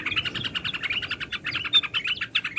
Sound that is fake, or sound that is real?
real